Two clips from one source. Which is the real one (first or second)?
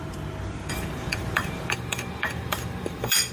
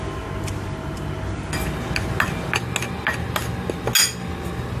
second